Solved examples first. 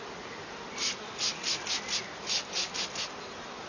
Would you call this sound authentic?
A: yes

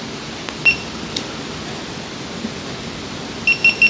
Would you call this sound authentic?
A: yes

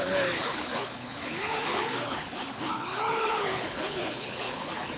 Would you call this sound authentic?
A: no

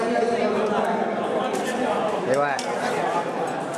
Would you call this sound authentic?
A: yes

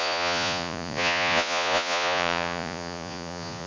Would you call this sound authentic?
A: no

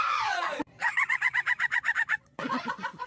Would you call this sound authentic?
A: no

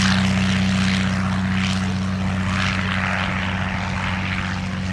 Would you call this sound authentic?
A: yes